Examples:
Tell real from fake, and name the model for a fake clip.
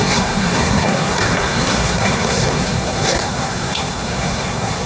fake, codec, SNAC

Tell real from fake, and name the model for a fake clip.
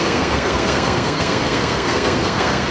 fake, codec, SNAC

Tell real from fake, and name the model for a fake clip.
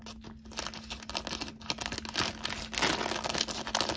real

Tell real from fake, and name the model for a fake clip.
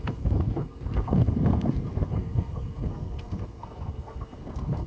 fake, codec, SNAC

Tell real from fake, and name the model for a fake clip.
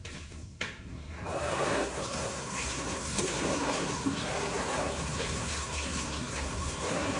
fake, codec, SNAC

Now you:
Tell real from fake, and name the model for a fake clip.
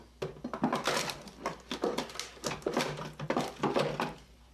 real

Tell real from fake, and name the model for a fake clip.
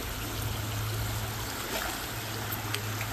real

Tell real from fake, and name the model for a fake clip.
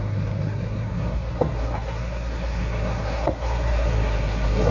fake, codec, SNAC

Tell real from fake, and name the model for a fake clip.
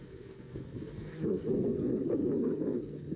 fake, codec, SNAC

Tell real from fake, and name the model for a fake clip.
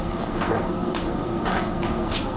fake, codec, SNAC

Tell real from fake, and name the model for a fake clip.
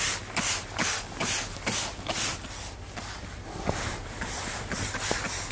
real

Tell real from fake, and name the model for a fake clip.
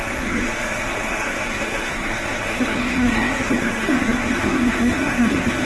fake, codec, SNAC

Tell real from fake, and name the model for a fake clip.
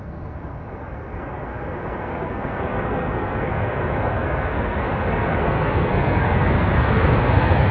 fake, codec, SNAC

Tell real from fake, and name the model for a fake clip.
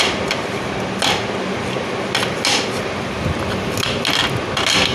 real